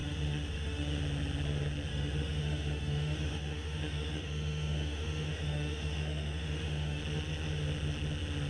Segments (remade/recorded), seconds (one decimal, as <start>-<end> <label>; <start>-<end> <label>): 0.0-1.0 remade; 1.0-1.9 recorded; 1.9-7.0 remade; 7.0-8.5 recorded